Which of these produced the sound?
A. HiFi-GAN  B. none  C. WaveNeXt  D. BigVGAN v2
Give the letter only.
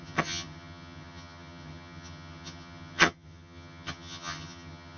A